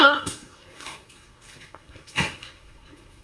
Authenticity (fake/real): fake